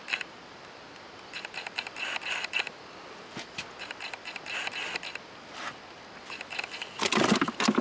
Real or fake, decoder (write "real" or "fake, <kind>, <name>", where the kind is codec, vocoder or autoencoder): real